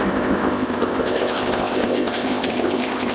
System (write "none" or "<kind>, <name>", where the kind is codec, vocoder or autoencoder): codec, ZipCodec